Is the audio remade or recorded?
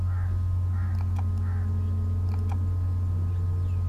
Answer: recorded